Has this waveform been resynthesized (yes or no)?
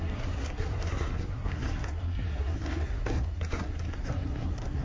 yes